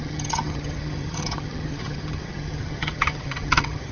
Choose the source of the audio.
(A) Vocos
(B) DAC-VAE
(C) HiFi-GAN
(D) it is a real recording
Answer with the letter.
C